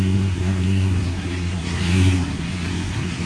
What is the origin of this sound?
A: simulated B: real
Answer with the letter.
A